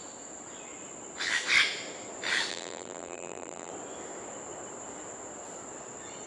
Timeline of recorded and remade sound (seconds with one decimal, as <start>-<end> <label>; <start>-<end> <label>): 0.0-2.5 recorded; 2.5-3.7 remade; 3.7-6.3 recorded